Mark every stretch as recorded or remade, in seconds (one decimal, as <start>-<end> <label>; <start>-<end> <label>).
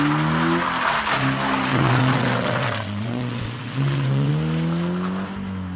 0.0-1.7 recorded; 1.7-4.3 remade; 4.3-5.8 recorded